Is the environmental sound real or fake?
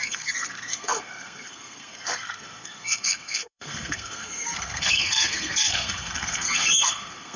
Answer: fake